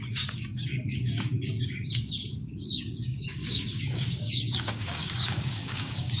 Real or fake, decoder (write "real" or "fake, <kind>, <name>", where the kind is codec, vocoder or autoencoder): fake, codec, DAC